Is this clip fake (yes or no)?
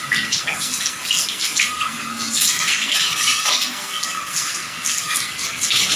yes